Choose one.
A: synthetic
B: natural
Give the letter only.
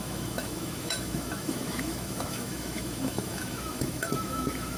A